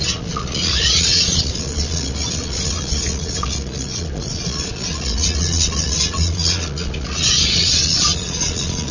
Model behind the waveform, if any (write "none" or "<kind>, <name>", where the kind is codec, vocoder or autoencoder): vocoder, Vocos